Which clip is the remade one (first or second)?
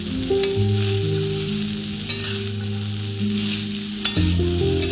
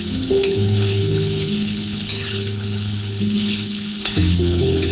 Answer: second